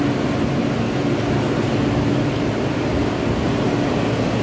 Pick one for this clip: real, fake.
real